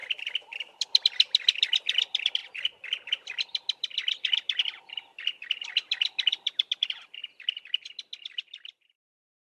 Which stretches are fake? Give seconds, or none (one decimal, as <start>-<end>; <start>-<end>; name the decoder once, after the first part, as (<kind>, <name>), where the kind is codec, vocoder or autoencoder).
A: 0.0-2.4 (vocoder, BigVGAN v2); 3.1-7.2; 8.2-9.6